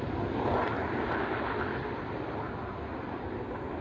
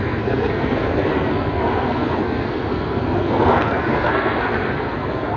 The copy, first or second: second